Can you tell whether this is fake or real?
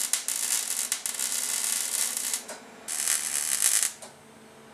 real